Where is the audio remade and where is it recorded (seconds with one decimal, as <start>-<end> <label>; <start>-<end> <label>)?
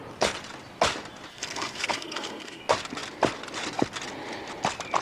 0.0-1.3 recorded; 1.3-2.6 remade; 2.6-5.0 recorded